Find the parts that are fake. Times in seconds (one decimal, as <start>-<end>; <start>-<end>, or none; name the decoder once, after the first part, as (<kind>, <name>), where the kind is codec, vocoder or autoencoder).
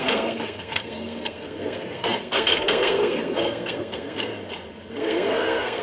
0.0-4.3 (codec, SNAC); 4.9-5.8